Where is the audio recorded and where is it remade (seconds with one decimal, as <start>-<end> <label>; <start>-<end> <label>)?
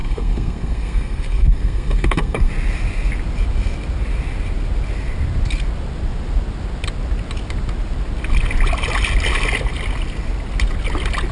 0.0-2.5 remade; 2.5-11.3 recorded